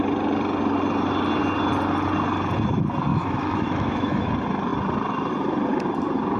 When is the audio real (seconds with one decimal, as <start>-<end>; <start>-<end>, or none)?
0.0-3.1; 4.3-6.4